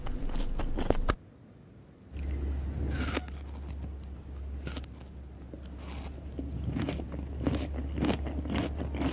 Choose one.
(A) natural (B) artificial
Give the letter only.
A